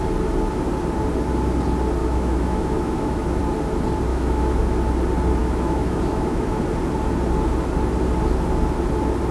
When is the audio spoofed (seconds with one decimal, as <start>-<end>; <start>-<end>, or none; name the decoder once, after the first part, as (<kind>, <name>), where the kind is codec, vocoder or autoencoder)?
2.0-3.4 (autoencoder, DAC-VAE); 4.1-4.6; 5.4-6.6